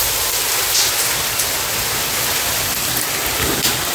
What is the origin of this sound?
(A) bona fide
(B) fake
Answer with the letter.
A